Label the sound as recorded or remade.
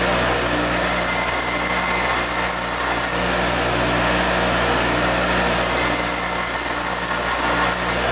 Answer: recorded